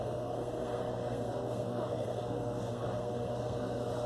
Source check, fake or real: fake